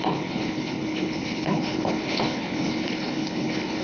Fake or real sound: fake